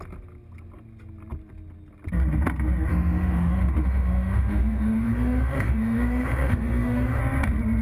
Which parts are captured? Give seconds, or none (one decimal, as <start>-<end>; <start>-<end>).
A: 0.0-2.9; 7.2-7.8